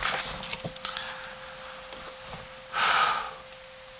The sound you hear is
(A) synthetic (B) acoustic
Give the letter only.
B